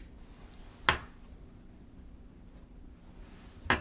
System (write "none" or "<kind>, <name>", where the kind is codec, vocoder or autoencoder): none